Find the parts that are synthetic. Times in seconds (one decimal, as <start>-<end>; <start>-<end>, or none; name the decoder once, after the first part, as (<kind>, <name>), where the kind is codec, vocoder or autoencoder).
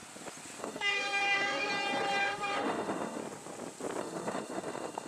0.6-1.7 (autoencoder, DAC-VAE); 2.2-3.2; 4.0-5.1